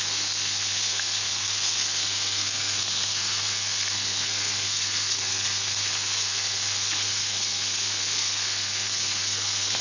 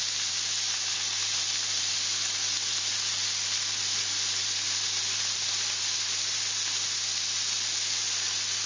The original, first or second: second